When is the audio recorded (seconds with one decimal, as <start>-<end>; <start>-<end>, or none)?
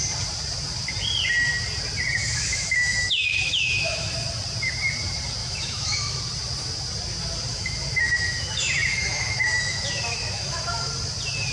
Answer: 0.0-2.2; 4.1-5.4; 6.2-7.5; 10.9-11.5